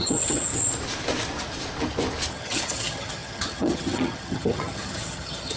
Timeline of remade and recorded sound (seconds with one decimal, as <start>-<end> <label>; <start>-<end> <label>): 0.0-0.5 remade; 0.5-2.3 recorded; 2.3-5.6 remade